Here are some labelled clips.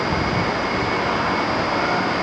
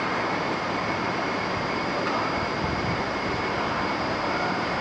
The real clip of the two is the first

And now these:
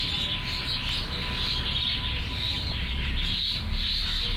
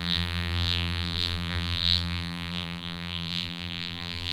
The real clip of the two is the first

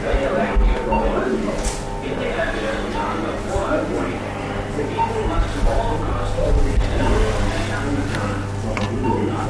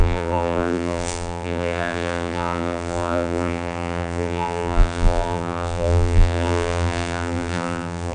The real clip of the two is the first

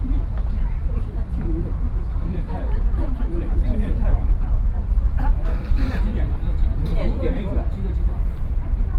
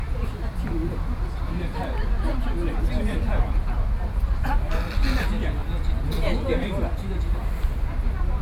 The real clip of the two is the second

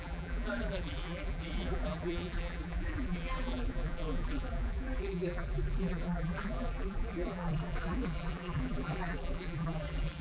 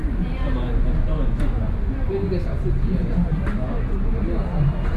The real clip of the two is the second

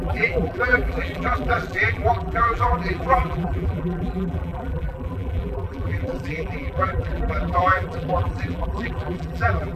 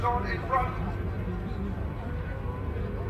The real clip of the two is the second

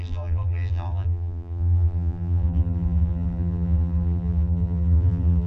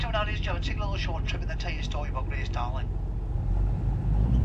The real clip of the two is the second